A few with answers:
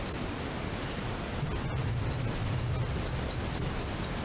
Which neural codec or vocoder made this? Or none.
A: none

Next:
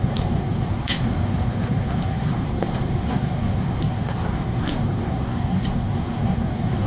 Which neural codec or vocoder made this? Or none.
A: codec, SNAC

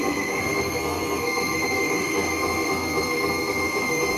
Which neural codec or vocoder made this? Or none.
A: codec, SNAC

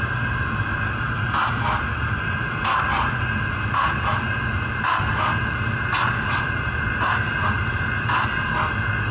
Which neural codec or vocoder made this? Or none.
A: none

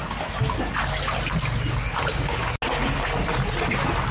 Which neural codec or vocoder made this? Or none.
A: none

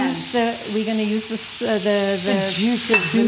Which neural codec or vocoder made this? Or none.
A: none